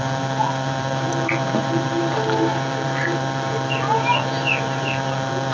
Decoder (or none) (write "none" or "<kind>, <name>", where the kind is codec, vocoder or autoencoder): vocoder, BigVGAN v2